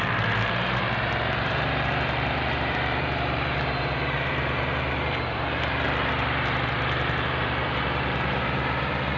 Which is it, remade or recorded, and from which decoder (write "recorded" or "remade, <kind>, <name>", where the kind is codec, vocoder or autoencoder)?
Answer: remade, vocoder, BigVGAN v2